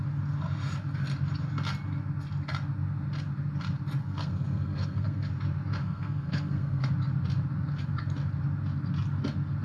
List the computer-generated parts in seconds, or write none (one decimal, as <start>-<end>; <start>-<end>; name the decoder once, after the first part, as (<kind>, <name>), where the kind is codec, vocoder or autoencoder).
4.0-5.3 (codec, SNAC); 5.8-6.9